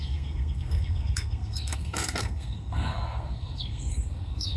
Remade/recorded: remade